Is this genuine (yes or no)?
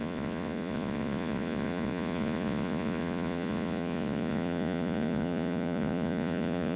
no